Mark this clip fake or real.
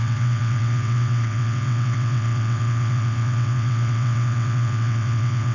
fake